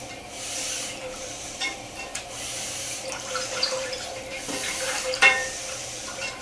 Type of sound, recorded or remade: remade